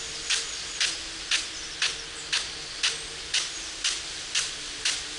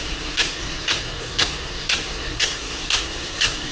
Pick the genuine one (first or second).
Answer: first